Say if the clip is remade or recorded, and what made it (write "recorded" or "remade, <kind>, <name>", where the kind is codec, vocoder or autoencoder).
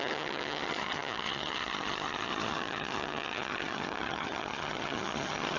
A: remade, vocoder, HiFi-GAN